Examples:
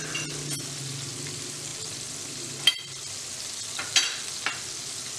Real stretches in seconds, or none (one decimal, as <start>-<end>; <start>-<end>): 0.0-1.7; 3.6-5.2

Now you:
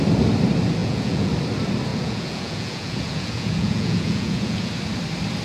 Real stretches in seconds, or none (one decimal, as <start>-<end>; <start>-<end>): 0.0-0.8; 1.3-1.9; 4.7-5.4

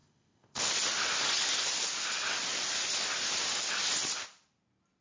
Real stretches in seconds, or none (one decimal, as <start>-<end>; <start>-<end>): 0.7-5.0